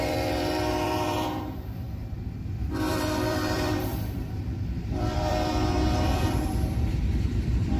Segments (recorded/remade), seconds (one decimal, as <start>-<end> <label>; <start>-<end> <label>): 0.0-7.8 remade